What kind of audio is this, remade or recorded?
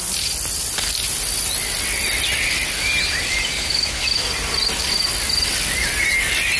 recorded